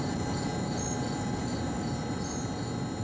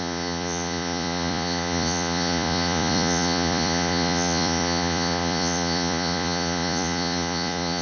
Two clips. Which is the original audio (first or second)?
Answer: first